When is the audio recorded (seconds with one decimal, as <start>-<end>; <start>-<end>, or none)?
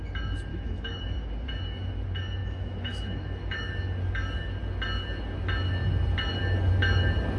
0.0-0.5; 1.0-2.4; 3.7-7.4